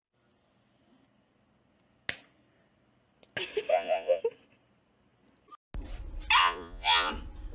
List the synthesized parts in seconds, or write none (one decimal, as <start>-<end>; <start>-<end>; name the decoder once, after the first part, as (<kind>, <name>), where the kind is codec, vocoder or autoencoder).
3.7-4.2 (vocoder, Vocos); 6.4-7.1